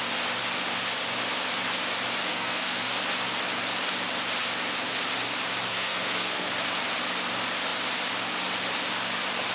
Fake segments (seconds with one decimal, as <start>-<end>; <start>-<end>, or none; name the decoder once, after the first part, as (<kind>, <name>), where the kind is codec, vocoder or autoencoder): 2.3-3.0 (codec, SNAC); 5.7-6.5